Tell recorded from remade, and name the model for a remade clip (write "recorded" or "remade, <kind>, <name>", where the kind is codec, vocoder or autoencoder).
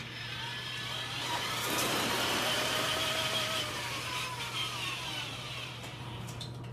remade, vocoder, BigVGAN v2